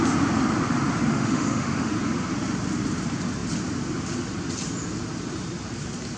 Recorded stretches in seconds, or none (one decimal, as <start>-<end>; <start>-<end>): 0.0-1.1; 1.9-6.2